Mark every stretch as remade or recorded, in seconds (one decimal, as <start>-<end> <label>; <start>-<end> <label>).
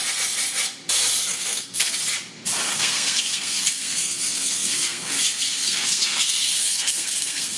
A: 0.0-1.3 recorded; 1.3-1.9 remade; 1.9-2.7 recorded; 2.7-7.6 remade